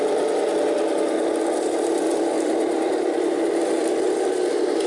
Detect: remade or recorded remade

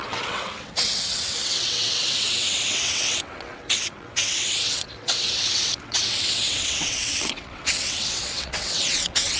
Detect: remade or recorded remade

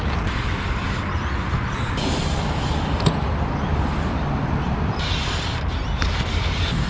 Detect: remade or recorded recorded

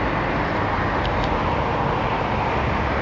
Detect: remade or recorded recorded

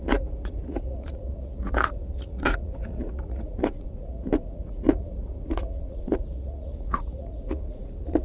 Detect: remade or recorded remade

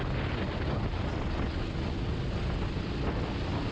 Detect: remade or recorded recorded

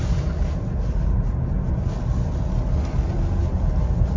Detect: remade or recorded recorded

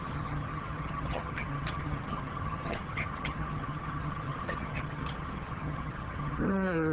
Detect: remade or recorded remade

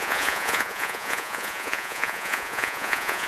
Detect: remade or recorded remade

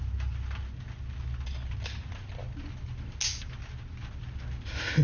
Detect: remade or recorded recorded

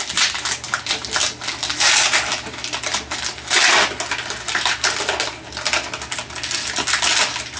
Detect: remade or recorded recorded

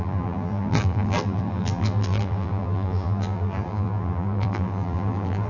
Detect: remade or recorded remade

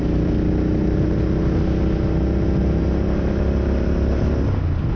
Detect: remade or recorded recorded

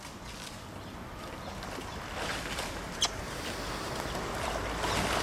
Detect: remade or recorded recorded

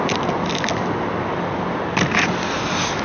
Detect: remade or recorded recorded